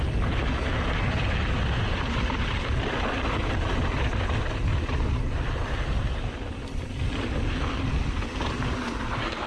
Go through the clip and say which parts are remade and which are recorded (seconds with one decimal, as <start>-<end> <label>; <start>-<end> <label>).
0.0-9.5 recorded